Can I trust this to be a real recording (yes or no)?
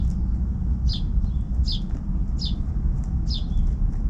yes